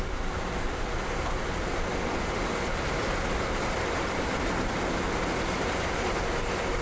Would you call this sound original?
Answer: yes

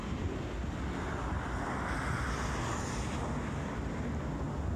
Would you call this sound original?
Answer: yes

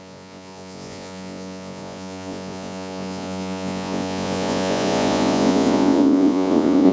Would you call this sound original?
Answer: no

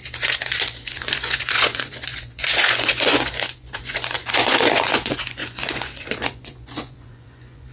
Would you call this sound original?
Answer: no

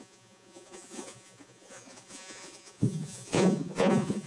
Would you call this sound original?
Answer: no